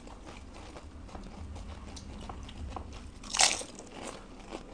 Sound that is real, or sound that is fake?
real